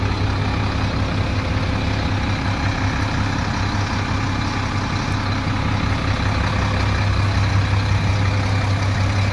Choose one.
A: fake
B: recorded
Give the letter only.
B